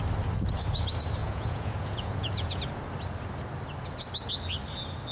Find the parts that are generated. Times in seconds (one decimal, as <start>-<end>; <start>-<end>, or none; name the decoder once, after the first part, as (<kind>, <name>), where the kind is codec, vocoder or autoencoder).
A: 1.2-2.6 (vocoder, Vocos)